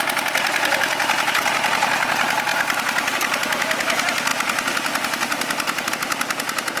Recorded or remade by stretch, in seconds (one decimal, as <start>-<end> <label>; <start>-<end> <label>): 0.0-6.8 recorded